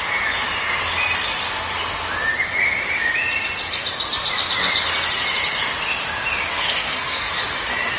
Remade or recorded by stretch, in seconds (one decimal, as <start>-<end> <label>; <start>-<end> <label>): 0.0-6.5 recorded; 6.5-7.3 remade; 7.3-8.0 recorded